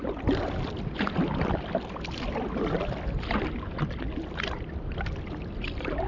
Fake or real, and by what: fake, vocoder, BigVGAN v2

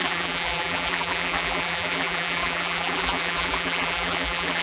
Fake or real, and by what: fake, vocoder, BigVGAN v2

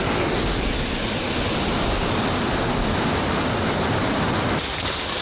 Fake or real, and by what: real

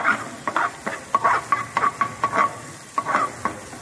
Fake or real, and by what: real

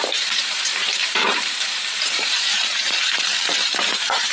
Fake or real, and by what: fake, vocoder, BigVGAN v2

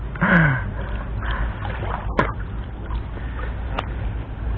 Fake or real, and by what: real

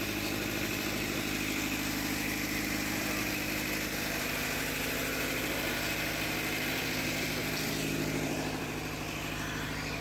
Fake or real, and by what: fake, vocoder, BigVGAN v2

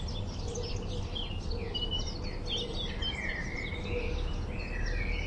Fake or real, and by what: real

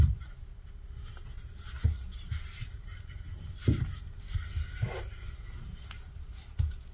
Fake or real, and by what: real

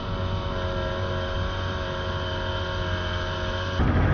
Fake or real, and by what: real